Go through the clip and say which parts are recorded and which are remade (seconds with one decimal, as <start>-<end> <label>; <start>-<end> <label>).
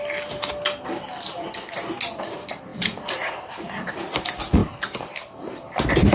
0.0-2.7 recorded; 2.7-3.9 remade; 3.9-4.6 recorded; 4.6-5.6 remade; 5.6-6.1 recorded